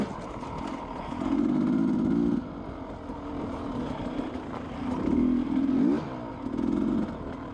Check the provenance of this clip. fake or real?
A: real